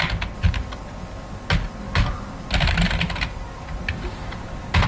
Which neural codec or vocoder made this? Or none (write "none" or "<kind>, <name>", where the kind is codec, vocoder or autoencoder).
none